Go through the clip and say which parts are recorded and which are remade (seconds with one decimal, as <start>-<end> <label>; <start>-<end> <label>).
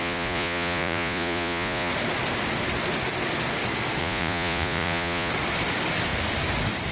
0.0-1.9 remade; 1.9-4.0 recorded; 4.0-5.3 remade; 5.3-6.9 recorded